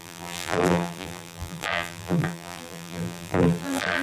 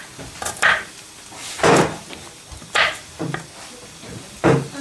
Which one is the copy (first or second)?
first